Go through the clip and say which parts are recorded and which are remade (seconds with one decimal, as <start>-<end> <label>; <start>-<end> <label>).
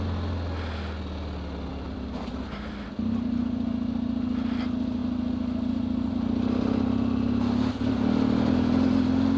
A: 0.0-1.7 recorded; 1.7-2.9 remade; 2.9-9.4 recorded